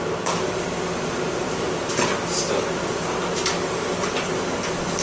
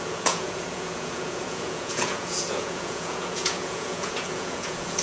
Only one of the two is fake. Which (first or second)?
second